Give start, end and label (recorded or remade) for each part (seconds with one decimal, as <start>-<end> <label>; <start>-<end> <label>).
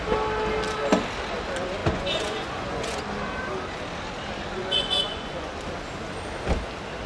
0.0-1.8 recorded; 1.8-3.0 remade; 3.0-4.6 recorded; 4.6-5.5 remade; 5.5-7.1 recorded